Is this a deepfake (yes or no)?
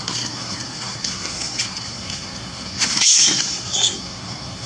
yes